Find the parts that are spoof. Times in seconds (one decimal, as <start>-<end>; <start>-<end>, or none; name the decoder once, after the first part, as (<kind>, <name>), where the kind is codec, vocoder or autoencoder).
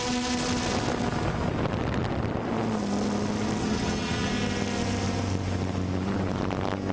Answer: 3.6-4.3 (vocoder, HiFi-GAN)